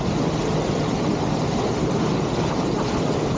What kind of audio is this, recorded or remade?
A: recorded